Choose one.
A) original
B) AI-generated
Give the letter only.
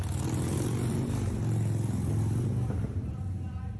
A